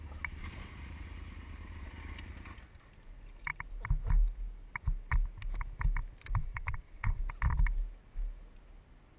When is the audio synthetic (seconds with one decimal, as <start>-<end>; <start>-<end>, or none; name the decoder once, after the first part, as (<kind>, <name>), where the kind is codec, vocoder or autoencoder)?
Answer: 6.4-7.2 (vocoder, WaveNeXt)